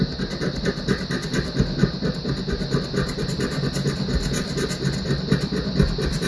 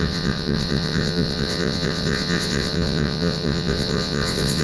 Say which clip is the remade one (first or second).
second